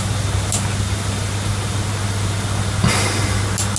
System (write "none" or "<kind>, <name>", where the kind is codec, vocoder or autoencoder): none